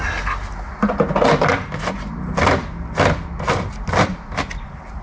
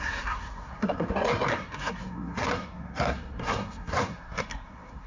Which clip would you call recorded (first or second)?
first